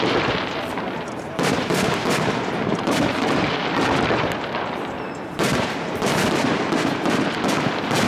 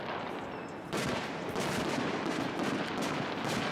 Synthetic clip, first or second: first